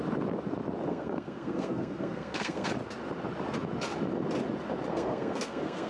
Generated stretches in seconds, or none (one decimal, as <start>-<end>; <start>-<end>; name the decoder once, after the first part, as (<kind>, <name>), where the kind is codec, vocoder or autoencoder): 0.9-2.7 (codec, SNAC); 4.9-5.9